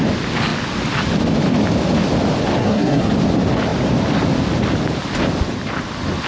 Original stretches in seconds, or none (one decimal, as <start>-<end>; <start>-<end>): 0.0-2.6; 3.1-6.3